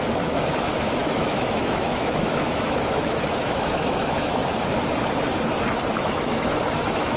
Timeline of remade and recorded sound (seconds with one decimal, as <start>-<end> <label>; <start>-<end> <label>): 0.0-4.4 remade; 4.4-5.9 recorded; 5.9-7.2 remade